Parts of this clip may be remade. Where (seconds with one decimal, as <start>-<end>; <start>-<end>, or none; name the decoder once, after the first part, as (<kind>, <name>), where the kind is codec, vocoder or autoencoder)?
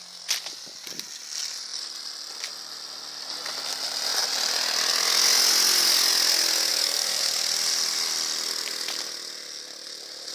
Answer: 6.7-7.2 (codec, DAC)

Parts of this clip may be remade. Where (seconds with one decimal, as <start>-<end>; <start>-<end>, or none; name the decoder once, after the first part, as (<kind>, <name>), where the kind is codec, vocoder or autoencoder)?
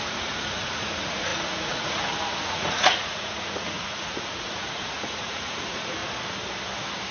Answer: 0.0-6.0 (vocoder, Vocos)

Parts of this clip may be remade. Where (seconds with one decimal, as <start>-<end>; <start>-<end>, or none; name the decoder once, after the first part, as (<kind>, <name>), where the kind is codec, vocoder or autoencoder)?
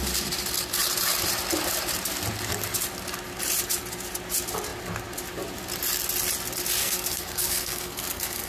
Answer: 6.8-8.5 (codec, SNAC)